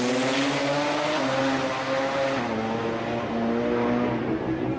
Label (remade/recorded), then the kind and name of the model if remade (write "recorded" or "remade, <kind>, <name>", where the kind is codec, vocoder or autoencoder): recorded